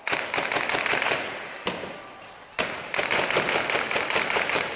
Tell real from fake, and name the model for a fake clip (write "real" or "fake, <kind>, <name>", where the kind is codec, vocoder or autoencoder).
real